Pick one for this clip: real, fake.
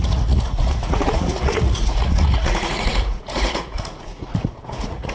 fake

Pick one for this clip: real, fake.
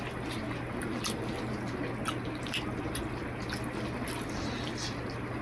real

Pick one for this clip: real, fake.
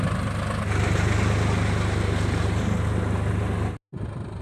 real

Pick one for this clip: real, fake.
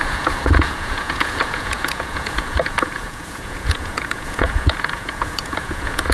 fake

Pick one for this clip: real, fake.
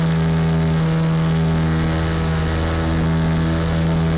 real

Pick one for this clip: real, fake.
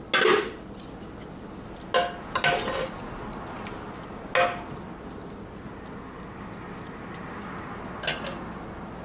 real